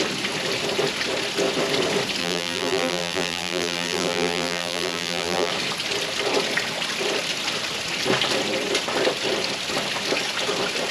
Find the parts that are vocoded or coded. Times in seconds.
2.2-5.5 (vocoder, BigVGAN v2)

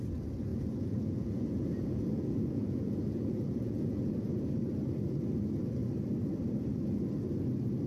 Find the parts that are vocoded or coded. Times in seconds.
0.5-4.1 (vocoder, Vocos)

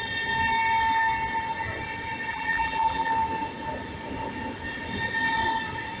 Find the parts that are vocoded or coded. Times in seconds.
2.3-3.1 (vocoder, BigVGAN v2)

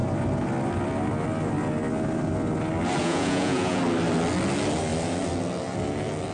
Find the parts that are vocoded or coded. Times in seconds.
3.0-3.8 (vocoder, Vocos)

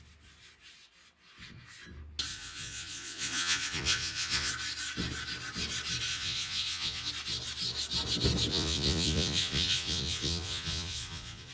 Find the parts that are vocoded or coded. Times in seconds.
2.3-4.5 (vocoder, Vocos); 6.1-7.1; 8.5-11.5